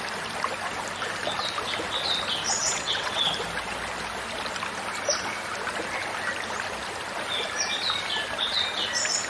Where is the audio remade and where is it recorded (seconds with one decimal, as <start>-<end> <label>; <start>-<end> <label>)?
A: 0.0-2.6 recorded; 2.6-3.2 remade; 3.2-9.3 recorded